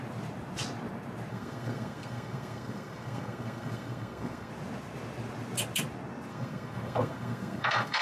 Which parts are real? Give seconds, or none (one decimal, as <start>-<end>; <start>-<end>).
0.0-1.3; 4.5-6.3